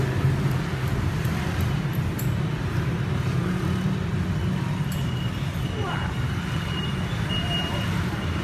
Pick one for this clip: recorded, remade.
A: remade